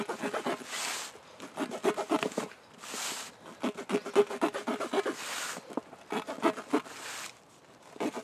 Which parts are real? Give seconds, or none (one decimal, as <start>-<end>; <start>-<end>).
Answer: 0.0-8.2